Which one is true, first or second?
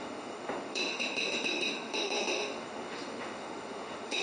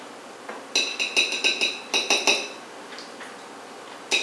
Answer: second